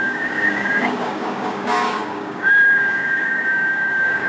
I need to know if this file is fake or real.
fake